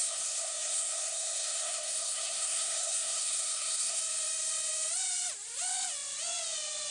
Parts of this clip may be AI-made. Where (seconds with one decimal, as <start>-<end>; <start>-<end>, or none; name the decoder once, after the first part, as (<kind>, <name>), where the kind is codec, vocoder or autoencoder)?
0.0-4.0 (codec, SNAC)